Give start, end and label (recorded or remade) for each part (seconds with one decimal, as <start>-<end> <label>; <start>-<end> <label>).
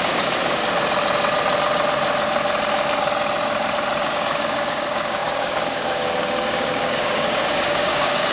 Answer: 0.0-0.6 remade; 0.6-4.1 recorded; 4.1-8.3 remade